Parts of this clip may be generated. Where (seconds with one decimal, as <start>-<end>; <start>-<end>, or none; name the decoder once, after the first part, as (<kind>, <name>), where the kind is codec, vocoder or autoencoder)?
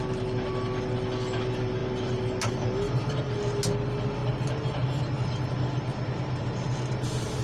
none